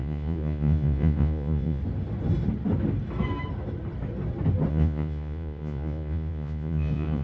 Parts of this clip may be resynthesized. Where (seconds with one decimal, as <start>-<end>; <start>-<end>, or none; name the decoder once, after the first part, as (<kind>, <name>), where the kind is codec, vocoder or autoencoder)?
0.0-1.8 (vocoder, Vocos); 4.7-7.2